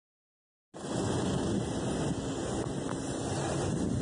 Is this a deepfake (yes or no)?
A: no